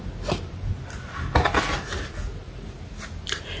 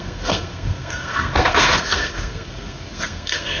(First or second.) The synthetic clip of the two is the second